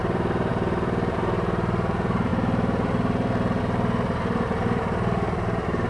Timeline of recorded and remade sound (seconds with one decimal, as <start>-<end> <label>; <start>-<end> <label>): 0.0-5.9 remade